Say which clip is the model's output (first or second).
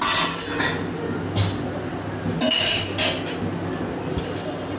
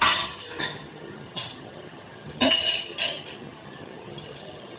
second